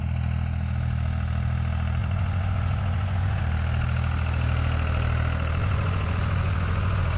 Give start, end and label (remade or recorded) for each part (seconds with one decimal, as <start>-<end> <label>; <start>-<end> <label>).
0.0-2.0 recorded; 2.0-3.4 remade; 3.4-5.6 recorded; 5.6-7.2 remade